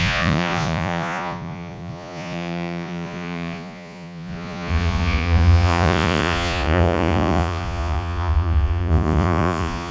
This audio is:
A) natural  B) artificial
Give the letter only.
B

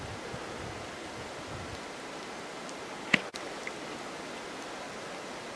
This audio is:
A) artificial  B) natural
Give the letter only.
B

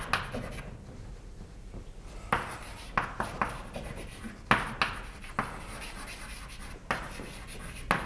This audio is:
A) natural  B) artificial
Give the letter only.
A